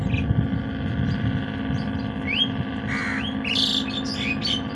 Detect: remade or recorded recorded